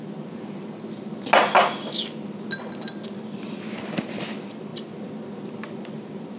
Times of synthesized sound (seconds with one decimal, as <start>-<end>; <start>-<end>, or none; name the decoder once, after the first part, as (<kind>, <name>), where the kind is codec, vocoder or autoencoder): none